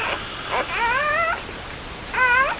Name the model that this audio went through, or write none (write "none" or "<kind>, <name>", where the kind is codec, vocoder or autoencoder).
none